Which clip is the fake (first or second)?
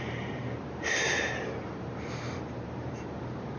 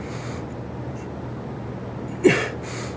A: first